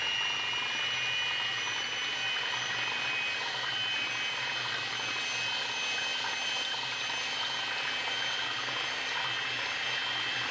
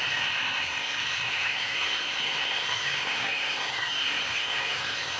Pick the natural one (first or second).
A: first